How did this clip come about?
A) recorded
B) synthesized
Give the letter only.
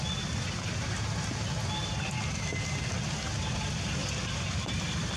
A